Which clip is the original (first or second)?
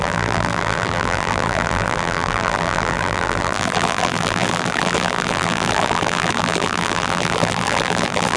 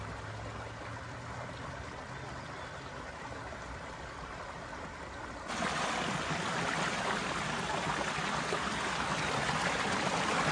second